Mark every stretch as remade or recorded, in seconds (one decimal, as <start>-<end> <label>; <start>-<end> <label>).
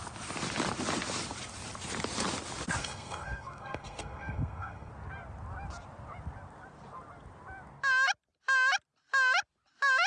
0.0-2.8 recorded; 2.8-4.9 remade; 4.9-10.1 recorded